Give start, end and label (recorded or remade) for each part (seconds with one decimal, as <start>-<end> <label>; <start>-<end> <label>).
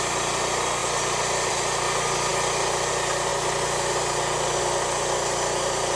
0.0-6.0 recorded